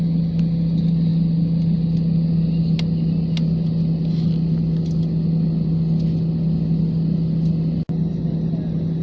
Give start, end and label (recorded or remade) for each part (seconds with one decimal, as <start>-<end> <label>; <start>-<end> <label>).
0.0-9.0 recorded